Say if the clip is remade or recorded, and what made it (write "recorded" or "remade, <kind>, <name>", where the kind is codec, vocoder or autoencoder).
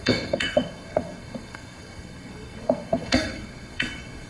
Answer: remade, codec, SNAC